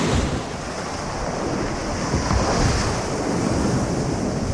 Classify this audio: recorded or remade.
recorded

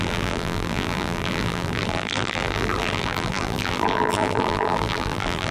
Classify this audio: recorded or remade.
remade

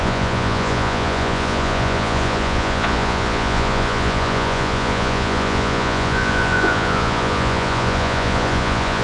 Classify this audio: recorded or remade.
remade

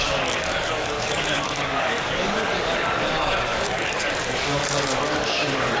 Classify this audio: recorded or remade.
remade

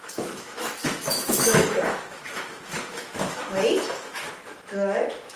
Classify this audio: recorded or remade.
remade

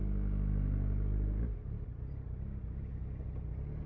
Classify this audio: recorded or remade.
recorded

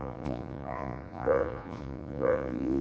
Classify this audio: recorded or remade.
remade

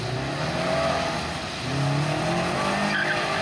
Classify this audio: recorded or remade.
recorded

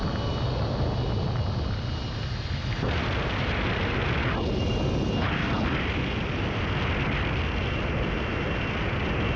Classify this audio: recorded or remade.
recorded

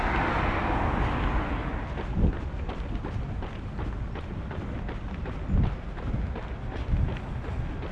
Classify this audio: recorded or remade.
recorded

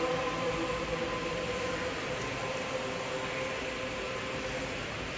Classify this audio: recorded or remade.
recorded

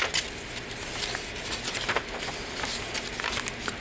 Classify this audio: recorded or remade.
recorded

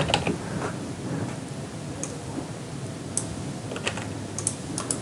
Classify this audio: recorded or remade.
recorded